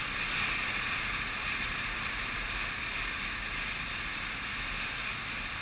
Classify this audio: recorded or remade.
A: recorded